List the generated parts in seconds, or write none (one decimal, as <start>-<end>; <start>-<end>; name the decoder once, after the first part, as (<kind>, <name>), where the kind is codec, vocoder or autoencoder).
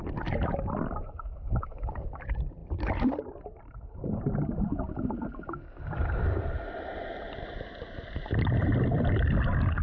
0.0-9.8 (vocoder, BigVGAN v2)